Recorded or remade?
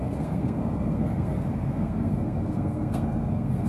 remade